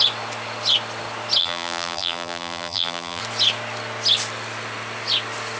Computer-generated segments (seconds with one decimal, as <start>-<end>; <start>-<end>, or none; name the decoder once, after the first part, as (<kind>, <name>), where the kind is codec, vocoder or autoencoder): 1.4-3.2 (vocoder, BigVGAN v2)